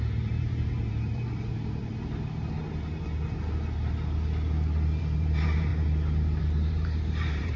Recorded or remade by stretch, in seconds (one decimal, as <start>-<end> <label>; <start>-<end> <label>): 0.0-1.9 remade; 1.9-5.0 recorded; 5.0-5.7 remade; 5.7-6.4 recorded; 6.4-7.6 remade